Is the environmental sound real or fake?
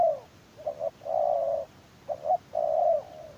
real